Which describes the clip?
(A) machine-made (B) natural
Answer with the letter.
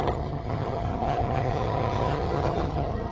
A